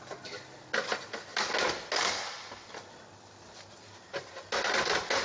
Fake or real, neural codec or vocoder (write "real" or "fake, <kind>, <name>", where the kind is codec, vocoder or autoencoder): real